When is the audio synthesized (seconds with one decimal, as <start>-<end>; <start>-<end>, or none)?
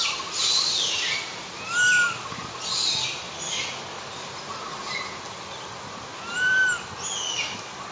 none